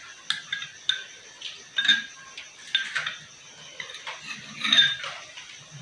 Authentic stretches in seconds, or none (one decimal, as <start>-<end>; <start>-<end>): 0.0-5.8